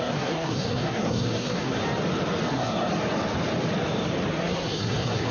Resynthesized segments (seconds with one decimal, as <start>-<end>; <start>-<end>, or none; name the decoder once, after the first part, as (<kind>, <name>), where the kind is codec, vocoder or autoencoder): 0.0-1.8 (codec, SNAC); 2.5-2.9; 4.3-5.3